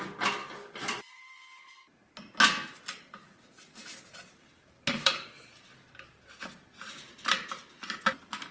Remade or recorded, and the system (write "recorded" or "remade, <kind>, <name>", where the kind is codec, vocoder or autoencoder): recorded